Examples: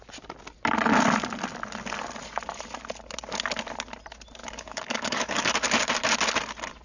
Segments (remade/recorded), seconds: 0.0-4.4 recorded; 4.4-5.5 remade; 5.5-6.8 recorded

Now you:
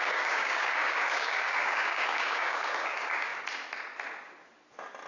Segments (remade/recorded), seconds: 0.0-3.3 remade; 3.3-5.1 recorded

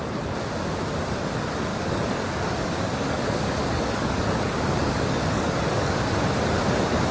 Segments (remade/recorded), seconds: 0.0-1.7 recorded; 1.7-6.0 remade; 6.0-7.1 recorded

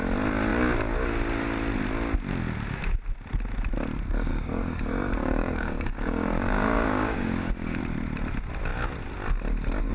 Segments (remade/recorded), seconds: 0.0-4.3 recorded; 4.3-7.8 remade; 7.8-9.9 recorded

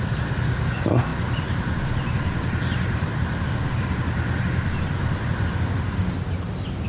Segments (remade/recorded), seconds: 0.0-6.9 recorded

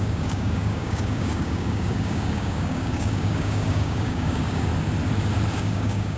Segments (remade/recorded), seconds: 0.0-4.7 remade; 4.7-5.5 recorded; 5.5-6.2 remade